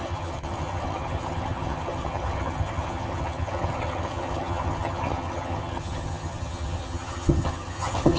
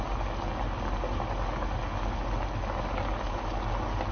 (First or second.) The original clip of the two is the second